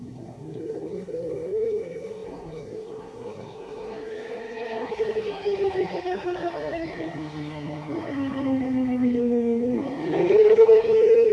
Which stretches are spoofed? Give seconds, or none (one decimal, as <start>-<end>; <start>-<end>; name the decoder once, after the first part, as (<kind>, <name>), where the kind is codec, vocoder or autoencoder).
0.0-11.3 (codec, SNAC)

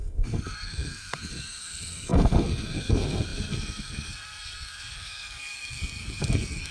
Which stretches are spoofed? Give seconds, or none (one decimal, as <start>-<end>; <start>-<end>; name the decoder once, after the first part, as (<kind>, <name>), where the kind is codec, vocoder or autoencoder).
0.0-6.7 (codec, SNAC)